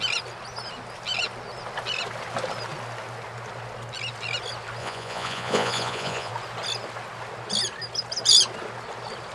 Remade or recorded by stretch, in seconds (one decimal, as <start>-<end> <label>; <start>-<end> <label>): 0.0-4.8 recorded; 4.8-6.3 remade; 6.3-9.3 recorded